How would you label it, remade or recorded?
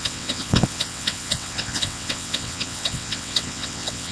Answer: remade